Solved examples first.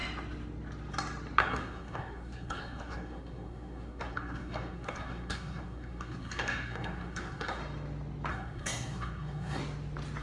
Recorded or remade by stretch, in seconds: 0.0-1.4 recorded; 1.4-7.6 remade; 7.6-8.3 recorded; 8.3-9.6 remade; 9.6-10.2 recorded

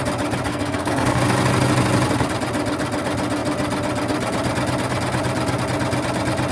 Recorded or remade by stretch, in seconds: 0.0-0.5 recorded; 0.5-1.2 remade; 1.2-6.5 recorded

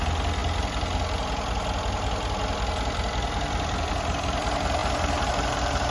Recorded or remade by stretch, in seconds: 0.0-5.9 recorded

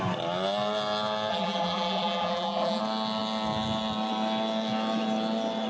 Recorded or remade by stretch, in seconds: 0.0-1.3 recorded; 1.3-2.8 remade; 2.8-5.7 recorded